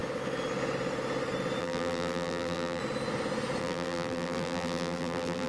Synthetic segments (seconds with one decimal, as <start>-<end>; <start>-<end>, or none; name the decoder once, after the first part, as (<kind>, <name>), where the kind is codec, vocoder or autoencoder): 1.6-2.8 (vocoder, BigVGAN v2); 3.6-5.5